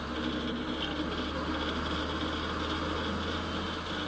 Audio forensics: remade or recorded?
recorded